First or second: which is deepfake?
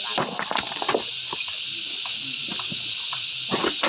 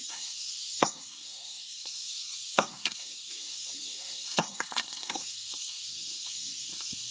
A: second